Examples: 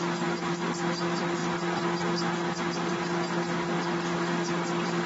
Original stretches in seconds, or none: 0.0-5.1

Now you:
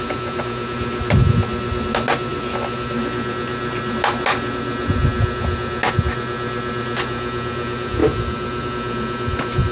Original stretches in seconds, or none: 0.0-9.7

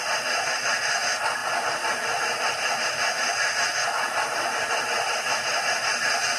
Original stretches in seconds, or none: 0.0-6.4